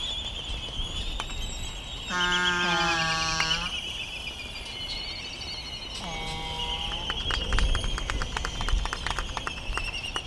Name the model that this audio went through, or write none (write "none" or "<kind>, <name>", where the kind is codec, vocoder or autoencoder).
none